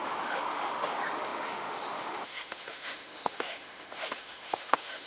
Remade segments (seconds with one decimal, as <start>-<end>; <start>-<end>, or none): 0.0-5.1